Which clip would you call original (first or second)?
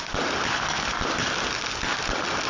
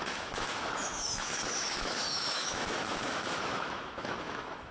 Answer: first